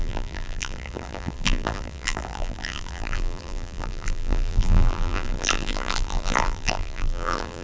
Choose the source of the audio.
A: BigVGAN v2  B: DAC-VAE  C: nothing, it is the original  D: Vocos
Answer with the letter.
A